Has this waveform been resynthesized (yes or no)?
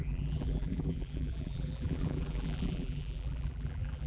yes